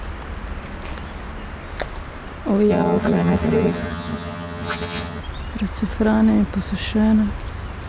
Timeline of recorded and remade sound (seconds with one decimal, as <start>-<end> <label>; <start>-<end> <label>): 0.0-2.7 recorded; 2.7-5.2 remade; 5.2-7.9 recorded